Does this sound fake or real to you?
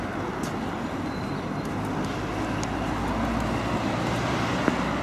real